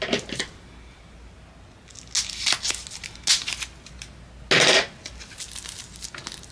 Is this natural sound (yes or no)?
yes